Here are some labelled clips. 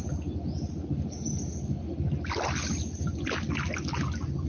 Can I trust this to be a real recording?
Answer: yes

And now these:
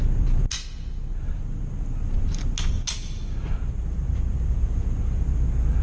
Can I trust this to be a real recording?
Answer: yes